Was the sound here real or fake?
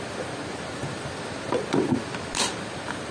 real